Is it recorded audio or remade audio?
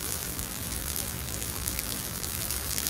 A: remade